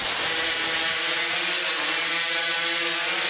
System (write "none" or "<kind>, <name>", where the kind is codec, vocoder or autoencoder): none